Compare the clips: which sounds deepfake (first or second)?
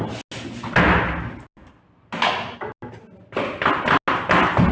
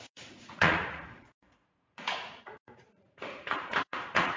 second